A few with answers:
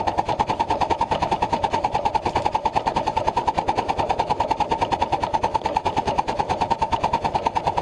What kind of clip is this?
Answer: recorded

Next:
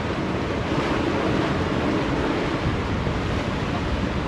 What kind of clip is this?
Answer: recorded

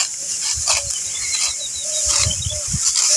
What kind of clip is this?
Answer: recorded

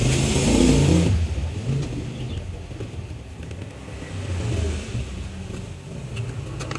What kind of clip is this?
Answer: recorded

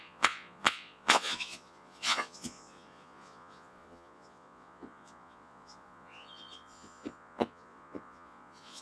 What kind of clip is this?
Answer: remade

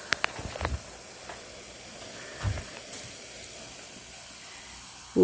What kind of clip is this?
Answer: recorded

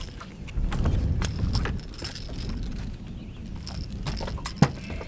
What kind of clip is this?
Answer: recorded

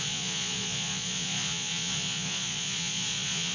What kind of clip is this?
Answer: remade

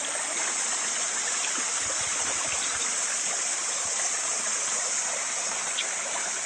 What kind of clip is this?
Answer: recorded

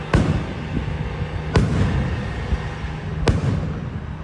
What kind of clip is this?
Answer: recorded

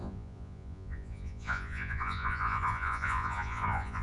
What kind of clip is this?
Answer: remade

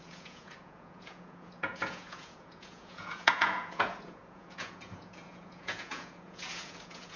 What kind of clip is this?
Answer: remade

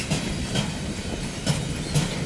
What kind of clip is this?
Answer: recorded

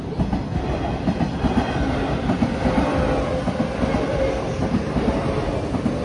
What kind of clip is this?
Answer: recorded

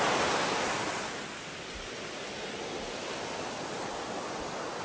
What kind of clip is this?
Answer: recorded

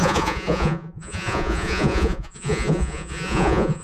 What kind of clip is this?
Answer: remade